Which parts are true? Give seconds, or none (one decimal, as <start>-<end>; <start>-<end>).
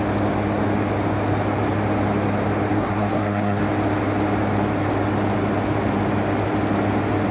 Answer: 0.0-2.7; 3.6-7.3